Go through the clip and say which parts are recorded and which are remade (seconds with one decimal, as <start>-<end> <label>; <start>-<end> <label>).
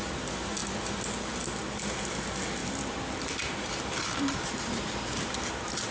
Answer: 0.0-2.6 recorded; 2.6-5.2 remade; 5.2-5.9 recorded